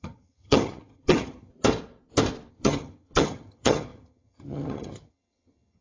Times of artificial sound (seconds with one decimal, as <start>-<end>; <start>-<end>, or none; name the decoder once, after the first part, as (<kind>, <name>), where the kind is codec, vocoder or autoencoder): 0.0-1.5 (vocoder, HiFi-GAN); 2.5-5.8